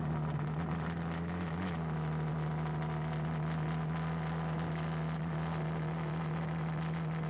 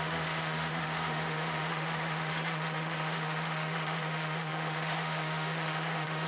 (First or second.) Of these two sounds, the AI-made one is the second